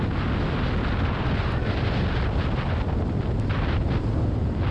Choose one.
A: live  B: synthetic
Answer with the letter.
A